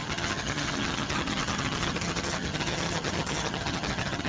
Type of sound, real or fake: fake